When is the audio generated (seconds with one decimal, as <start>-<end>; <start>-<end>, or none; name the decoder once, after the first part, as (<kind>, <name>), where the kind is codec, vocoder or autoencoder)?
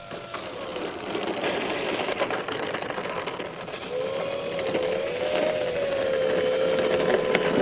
none